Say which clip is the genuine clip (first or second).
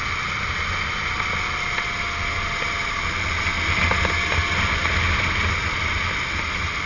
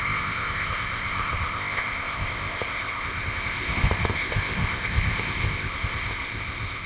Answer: first